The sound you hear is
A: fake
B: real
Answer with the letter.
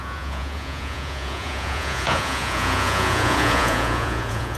A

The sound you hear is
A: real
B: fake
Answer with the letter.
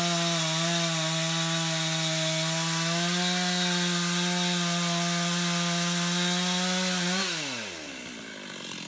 A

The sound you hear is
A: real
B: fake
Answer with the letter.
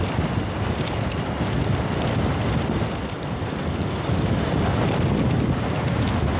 A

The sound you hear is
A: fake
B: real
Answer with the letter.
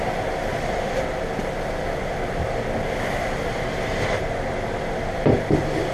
B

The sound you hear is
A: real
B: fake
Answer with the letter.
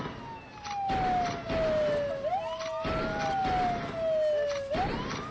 A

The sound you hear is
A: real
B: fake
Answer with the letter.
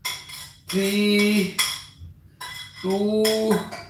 A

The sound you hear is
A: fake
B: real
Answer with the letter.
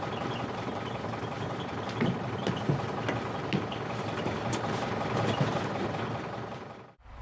B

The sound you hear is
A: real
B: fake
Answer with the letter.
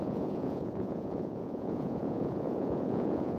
B